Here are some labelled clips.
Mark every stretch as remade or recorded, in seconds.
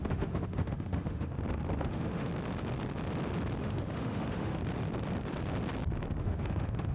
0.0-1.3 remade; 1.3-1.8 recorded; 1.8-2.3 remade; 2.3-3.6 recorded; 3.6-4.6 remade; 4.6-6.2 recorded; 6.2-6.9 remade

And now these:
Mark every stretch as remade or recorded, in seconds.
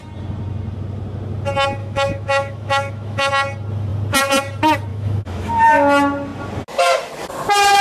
0.0-1.8 recorded; 1.8-3.3 remade; 3.3-4.9 recorded; 4.9-5.5 remade; 5.5-7.8 recorded